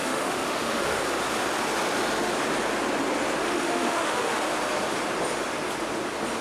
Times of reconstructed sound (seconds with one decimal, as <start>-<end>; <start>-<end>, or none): 0.0-1.0; 3.4-4.3